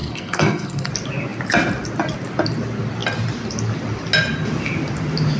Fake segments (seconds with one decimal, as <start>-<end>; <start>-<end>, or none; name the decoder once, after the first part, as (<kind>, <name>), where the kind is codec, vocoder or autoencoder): 0.0-0.9 (codec, SNAC)